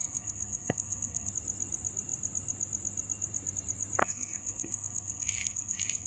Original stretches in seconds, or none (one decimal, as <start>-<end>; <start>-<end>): 1.3-4.0